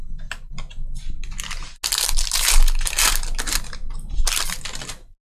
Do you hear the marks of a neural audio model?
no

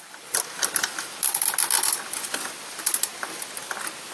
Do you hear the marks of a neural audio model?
no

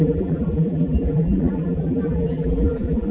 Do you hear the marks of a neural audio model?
yes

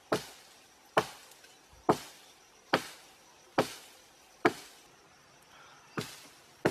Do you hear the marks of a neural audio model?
no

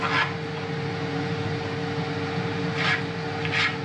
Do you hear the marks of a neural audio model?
no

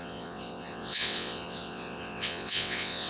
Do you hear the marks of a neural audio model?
yes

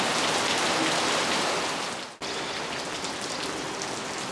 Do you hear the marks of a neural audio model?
no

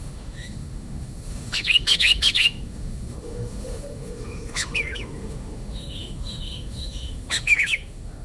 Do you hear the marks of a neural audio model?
yes